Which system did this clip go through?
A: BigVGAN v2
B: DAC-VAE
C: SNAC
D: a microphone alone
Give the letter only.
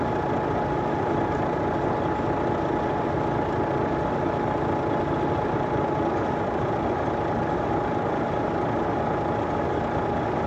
D